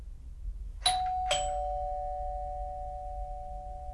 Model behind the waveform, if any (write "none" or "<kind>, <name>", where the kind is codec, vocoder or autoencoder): none